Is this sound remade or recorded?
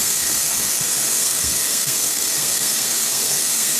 remade